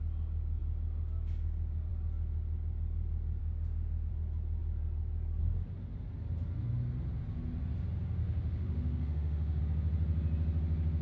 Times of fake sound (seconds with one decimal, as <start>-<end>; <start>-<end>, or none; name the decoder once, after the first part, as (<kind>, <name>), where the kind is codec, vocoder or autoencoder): 3.4-4.1 (autoencoder, DAC-VAE); 8.2-9.6